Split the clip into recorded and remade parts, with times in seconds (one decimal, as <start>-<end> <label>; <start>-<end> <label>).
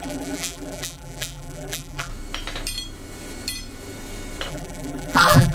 0.0-2.1 remade; 2.1-4.5 recorded; 4.5-5.5 remade